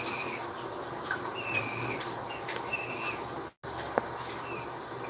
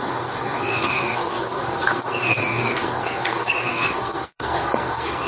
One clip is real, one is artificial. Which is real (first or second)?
first